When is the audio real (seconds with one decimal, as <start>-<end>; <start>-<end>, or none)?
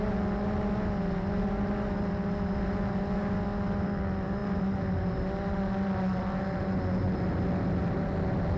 0.0-8.6